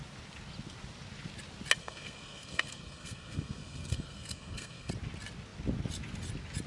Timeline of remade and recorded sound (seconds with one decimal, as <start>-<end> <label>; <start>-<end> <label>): 0.0-1.8 recorded; 1.8-4.9 remade; 4.9-6.7 recorded